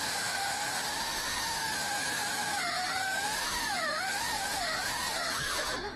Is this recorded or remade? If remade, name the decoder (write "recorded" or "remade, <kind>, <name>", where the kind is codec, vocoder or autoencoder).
remade, autoencoder, DAC-VAE